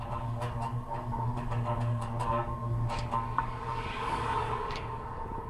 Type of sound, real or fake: fake